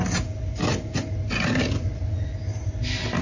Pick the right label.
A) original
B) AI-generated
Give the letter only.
A